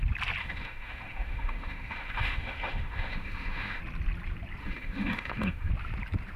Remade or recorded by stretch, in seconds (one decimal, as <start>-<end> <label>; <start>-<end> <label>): 0.0-0.4 recorded; 0.4-3.8 remade; 3.8-4.6 recorded; 4.6-5.7 remade; 5.7-6.4 recorded